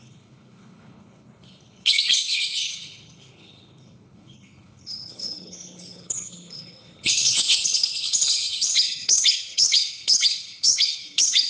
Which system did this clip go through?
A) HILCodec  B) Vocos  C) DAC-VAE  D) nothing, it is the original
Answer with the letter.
A